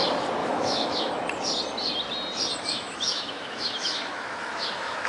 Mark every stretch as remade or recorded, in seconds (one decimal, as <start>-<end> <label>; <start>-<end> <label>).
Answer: 0.0-0.4 recorded; 0.4-1.1 remade; 1.1-2.7 recorded; 2.7-5.1 remade